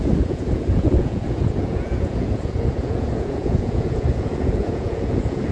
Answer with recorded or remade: remade